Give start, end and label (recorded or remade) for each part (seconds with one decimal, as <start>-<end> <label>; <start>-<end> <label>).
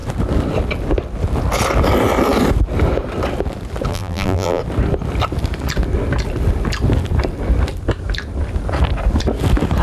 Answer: 0.0-3.9 recorded; 3.9-4.6 remade; 4.6-9.8 recorded